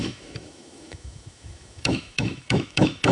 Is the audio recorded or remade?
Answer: remade